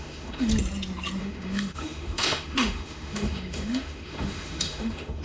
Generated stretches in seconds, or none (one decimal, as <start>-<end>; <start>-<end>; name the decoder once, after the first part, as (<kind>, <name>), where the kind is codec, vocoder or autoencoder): 0.0-0.5 (autoencoder, DAC-VAE); 1.2-5.2